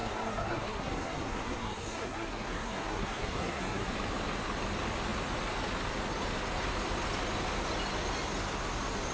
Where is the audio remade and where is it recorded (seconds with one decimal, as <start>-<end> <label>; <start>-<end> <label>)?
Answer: 0.0-3.9 remade; 3.9-9.1 recorded